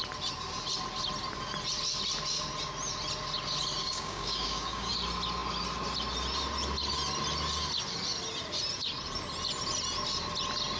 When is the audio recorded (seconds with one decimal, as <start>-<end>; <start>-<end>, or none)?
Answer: 0.0-3.8; 4.9-10.8